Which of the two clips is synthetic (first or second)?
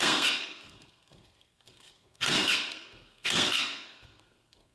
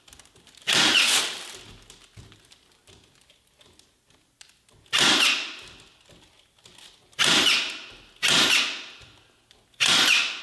first